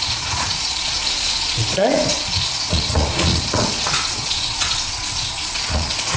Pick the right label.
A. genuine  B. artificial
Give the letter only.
B